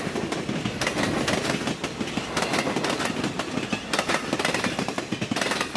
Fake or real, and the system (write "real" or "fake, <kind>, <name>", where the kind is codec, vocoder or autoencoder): real